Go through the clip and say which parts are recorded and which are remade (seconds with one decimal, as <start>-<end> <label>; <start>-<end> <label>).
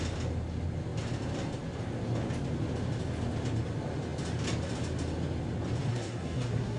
0.0-5.9 recorded; 5.9-6.8 remade